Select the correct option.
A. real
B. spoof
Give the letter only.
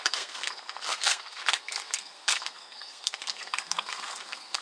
B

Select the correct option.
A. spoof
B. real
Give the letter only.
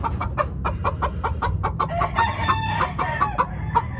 B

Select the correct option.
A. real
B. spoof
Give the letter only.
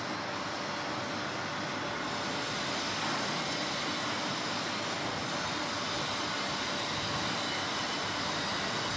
A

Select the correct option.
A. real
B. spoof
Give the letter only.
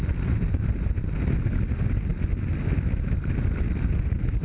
A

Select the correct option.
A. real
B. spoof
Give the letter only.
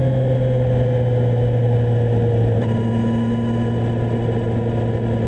A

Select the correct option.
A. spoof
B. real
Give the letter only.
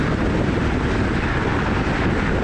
B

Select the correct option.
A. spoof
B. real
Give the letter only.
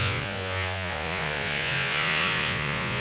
A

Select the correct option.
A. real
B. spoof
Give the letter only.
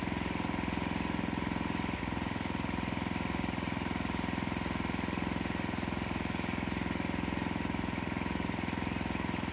A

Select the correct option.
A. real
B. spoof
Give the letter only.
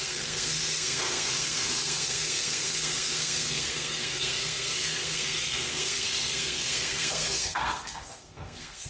B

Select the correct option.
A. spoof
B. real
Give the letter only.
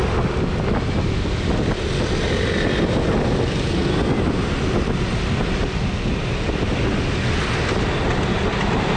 B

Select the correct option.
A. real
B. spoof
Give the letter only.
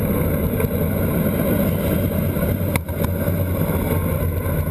A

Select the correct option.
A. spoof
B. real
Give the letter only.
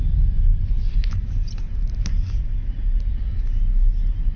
B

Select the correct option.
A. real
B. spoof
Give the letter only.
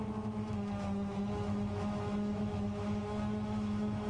B